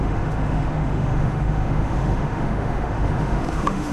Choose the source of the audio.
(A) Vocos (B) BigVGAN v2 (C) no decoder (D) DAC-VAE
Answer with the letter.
D